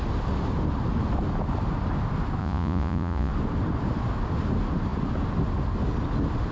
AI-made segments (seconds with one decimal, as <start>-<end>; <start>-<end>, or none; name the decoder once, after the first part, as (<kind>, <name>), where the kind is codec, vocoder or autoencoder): 2.4-3.3 (vocoder, Vocos)

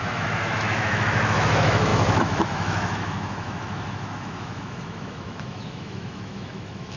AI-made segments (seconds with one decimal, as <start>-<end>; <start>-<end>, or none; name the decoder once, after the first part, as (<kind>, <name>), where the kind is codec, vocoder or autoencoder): 0.0-7.0 (autoencoder, DAC-VAE)